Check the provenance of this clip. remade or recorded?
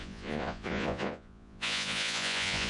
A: remade